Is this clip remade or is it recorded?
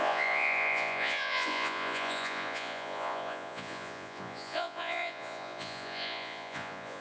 remade